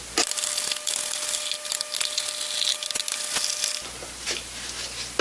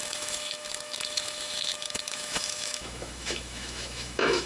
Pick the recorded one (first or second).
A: first